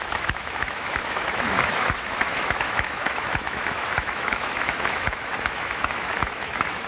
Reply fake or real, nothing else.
fake